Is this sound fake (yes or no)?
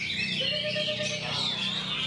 no